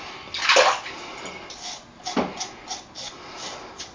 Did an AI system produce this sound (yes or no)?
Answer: no